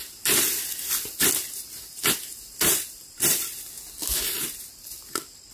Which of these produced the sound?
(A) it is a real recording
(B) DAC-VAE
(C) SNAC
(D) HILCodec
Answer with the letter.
A